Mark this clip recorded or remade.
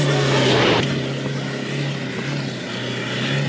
recorded